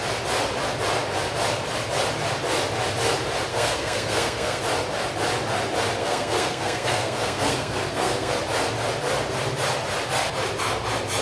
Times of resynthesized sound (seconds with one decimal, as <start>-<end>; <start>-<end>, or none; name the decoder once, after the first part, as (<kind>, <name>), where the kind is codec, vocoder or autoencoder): 3.5-4.6 (codec, SNAC); 6.0-8.3